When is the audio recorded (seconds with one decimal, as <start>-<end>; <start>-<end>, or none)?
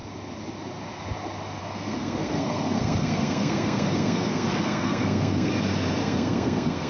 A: 0.0-1.6; 5.5-6.0